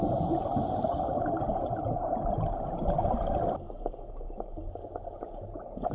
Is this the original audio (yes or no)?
yes